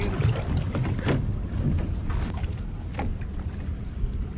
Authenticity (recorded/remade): recorded